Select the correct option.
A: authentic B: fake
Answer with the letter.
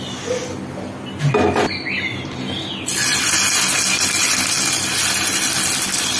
A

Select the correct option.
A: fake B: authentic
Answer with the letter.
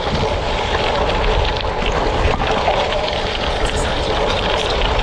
A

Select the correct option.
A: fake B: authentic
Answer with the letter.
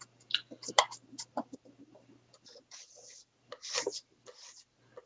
B